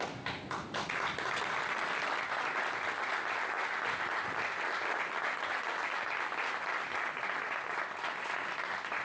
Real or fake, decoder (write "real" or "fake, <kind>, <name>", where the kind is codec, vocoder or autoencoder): real